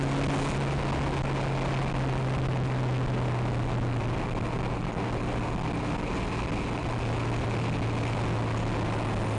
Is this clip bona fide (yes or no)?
yes